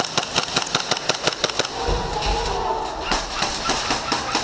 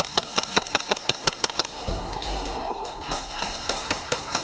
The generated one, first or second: second